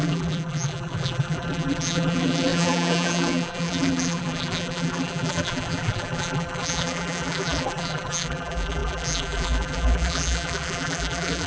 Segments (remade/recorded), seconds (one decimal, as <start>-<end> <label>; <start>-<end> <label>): 0.0-11.5 remade